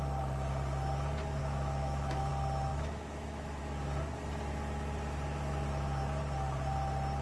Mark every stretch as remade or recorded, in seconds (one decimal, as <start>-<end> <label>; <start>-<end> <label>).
0.0-1.4 recorded; 1.4-2.3 remade; 2.3-2.7 recorded; 2.7-3.6 remade; 3.6-7.2 recorded